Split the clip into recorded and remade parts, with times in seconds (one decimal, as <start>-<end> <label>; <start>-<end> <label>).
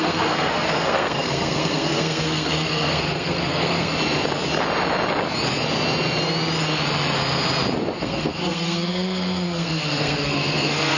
0.0-3.9 remade; 3.9-8.0 recorded; 8.0-11.0 remade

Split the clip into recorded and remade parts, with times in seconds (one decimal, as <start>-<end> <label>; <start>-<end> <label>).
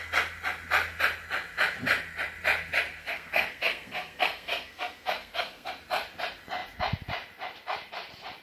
0.0-3.0 recorded; 3.0-5.7 remade; 5.7-8.4 recorded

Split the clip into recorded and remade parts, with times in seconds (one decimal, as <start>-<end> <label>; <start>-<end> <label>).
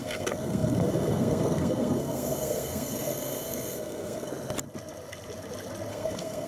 0.0-4.3 remade; 4.3-5.9 recorded; 5.9-6.5 remade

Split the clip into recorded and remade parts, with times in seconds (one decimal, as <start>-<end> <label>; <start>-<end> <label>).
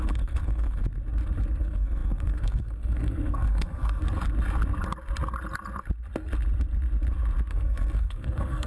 0.0-0.8 remade; 0.8-1.6 recorded; 1.6-4.0 remade; 4.0-7.5 recorded; 7.5-8.7 remade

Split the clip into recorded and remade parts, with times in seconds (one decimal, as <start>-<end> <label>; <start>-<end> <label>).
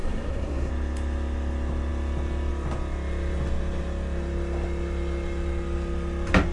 0.0-0.7 remade; 0.7-6.5 recorded